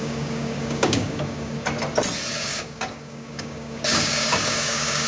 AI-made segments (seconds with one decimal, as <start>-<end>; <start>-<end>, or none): 0.0-1.5; 2.3-5.1